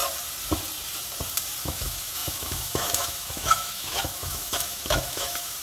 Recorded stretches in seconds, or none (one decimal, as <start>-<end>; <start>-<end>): 0.0-1.6